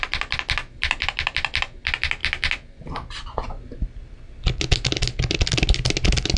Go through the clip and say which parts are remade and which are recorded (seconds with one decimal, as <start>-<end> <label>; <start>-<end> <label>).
0.0-6.4 recorded